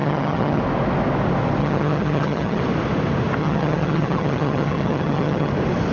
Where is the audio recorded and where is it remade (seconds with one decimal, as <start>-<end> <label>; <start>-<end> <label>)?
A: 0.0-0.6 remade; 0.6-1.6 recorded; 1.6-2.6 remade; 2.6-3.4 recorded; 3.4-5.5 remade; 5.5-5.9 recorded